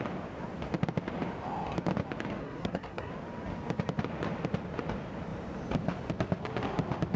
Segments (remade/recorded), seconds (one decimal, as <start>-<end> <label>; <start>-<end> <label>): 0.0-2.4 recorded; 2.4-3.1 remade; 3.1-7.2 recorded

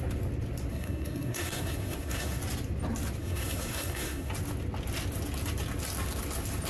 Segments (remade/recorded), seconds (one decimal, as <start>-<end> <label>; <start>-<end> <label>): 0.0-0.7 recorded; 0.7-2.4 remade; 2.4-3.2 recorded; 3.2-4.3 remade; 4.3-6.7 recorded

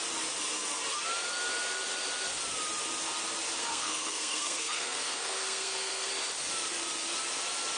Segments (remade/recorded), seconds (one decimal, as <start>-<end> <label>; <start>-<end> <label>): 0.0-3.6 recorded; 3.6-6.1 remade; 6.1-7.8 recorded

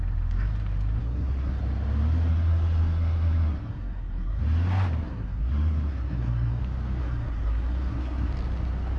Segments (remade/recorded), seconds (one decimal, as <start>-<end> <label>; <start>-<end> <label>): 0.0-1.0 recorded; 1.0-1.6 remade; 1.6-2.3 recorded; 2.3-4.4 remade; 4.4-5.0 recorded; 5.0-6.6 remade; 6.6-7.0 recorded; 7.0-8.3 remade; 8.3-9.0 recorded